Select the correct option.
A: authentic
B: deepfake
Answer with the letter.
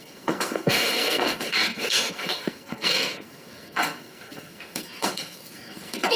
B